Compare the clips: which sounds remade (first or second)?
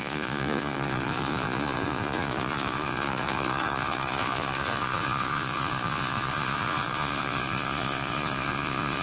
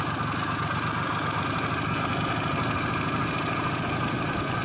first